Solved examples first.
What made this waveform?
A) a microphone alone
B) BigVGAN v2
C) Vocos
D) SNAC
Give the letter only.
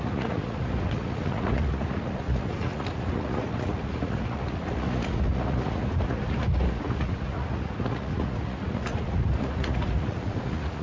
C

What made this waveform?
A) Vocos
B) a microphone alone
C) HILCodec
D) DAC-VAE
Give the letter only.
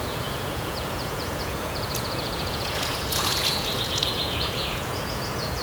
A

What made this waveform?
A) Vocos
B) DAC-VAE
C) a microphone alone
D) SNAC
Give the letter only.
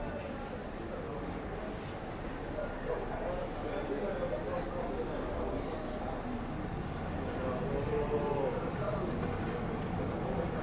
C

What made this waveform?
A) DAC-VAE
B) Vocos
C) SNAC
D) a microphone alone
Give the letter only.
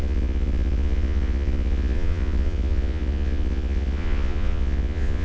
B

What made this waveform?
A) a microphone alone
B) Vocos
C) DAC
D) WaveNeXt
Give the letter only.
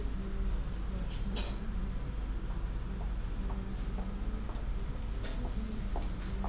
A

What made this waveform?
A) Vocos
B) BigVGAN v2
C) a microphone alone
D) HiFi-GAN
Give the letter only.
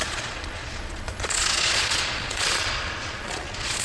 A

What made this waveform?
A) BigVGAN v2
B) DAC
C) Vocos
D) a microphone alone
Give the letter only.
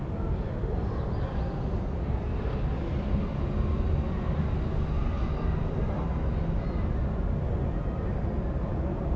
D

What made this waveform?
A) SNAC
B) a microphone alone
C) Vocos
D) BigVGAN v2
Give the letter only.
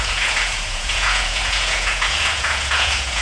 C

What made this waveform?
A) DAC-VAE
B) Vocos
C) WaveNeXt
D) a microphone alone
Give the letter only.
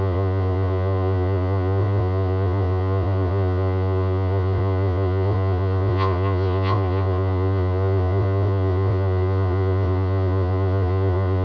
B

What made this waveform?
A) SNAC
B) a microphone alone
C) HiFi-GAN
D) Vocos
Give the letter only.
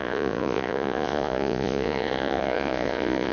D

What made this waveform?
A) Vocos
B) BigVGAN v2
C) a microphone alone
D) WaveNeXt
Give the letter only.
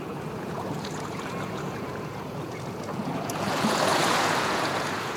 A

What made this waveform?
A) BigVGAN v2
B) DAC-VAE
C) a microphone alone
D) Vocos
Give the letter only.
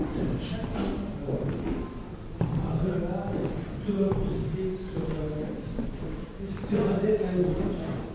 C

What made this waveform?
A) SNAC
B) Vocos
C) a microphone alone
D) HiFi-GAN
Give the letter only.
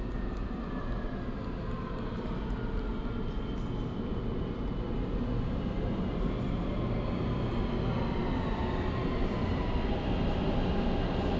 C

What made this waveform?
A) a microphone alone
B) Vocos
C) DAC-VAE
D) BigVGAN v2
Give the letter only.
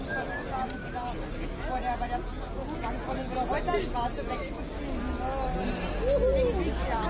A